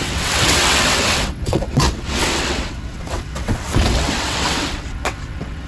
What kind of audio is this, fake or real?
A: fake